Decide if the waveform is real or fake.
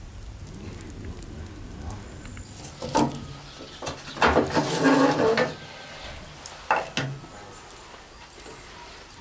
real